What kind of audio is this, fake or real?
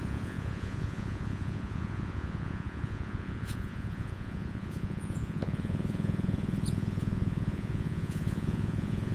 fake